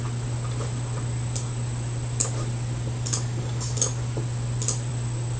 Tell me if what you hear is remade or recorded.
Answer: recorded